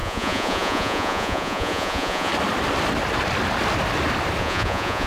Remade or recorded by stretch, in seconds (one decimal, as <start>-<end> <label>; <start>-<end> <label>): 0.0-2.3 remade; 2.3-4.4 recorded; 4.4-5.1 remade